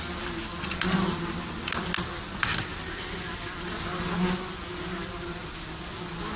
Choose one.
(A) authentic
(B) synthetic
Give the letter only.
A